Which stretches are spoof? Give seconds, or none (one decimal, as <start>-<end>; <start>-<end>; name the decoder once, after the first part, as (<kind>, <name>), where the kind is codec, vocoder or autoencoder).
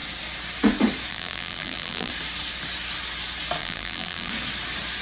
1.1-2.1 (vocoder, BigVGAN v2); 3.6-4.3